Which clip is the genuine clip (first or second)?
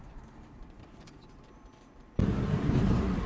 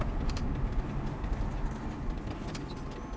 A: second